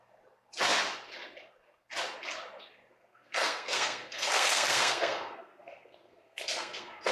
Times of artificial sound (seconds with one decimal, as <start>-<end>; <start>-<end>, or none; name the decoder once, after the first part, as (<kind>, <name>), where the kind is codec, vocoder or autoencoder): 3.1-7.1 (codec, SNAC)